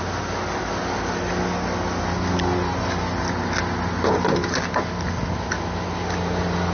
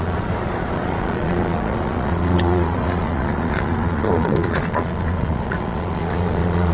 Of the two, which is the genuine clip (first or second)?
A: first